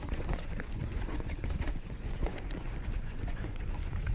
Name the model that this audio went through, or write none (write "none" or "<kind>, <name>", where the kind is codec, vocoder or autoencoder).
vocoder, Vocos